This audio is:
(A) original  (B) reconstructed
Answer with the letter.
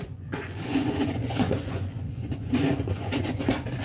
B